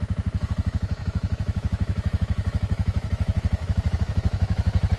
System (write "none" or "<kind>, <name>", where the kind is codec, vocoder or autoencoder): autoencoder, DAC-VAE